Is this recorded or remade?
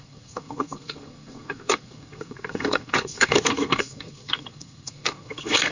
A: remade